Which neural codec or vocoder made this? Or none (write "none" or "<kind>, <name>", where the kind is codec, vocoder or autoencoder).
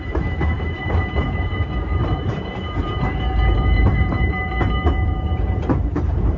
vocoder, BigVGAN v2